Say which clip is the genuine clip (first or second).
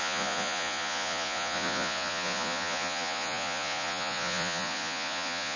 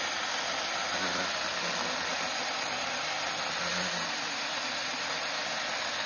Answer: second